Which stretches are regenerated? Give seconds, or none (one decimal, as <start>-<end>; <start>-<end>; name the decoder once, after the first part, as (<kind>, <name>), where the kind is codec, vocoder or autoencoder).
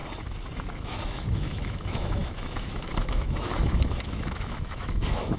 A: 0.5-5.4 (autoencoder, DAC-VAE)